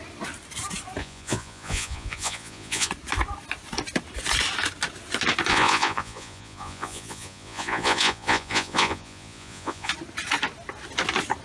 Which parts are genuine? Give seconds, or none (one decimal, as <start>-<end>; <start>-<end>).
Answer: 0.0-1.0; 2.9-5.5; 9.9-11.4